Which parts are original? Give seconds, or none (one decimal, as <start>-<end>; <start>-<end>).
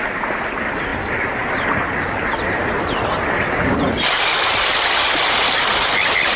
0.0-6.4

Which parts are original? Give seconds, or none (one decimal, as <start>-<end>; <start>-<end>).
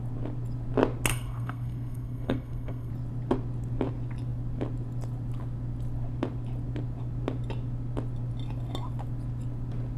0.0-1.1; 2.9-10.0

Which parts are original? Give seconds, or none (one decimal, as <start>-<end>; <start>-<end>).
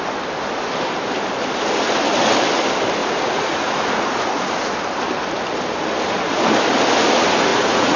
0.0-3.0; 4.3-7.5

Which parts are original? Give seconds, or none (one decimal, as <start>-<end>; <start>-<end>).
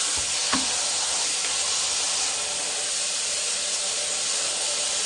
0.0-5.1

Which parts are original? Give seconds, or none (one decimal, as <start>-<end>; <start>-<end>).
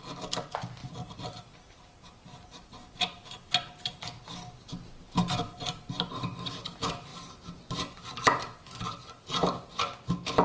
0.0-10.4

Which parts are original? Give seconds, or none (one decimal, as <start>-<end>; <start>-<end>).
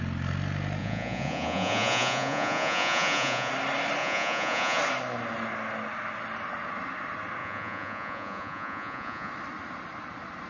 0.0-0.8; 3.5-4.0; 4.8-7.4; 9.3-10.5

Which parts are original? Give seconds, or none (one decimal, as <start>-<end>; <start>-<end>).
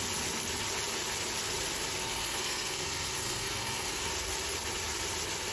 0.0-2.0; 4.1-5.5